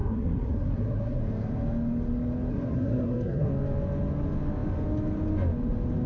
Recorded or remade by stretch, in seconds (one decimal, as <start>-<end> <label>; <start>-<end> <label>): 0.0-1.2 remade; 1.2-2.5 recorded; 2.5-3.5 remade; 3.5-6.1 recorded

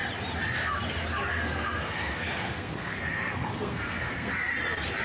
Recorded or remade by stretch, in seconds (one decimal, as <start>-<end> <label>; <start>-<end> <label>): 0.0-1.3 recorded; 1.3-4.3 remade; 4.3-5.0 recorded